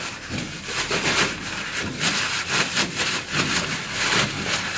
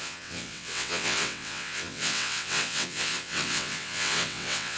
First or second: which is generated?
second